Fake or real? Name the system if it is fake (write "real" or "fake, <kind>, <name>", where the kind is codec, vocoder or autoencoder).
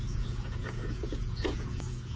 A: fake, vocoder, Vocos